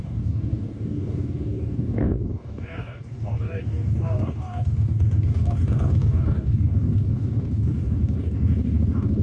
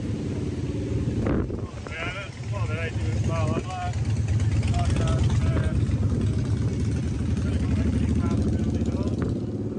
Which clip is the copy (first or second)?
first